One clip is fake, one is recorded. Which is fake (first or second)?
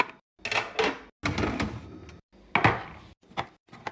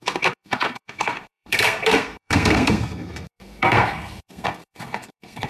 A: second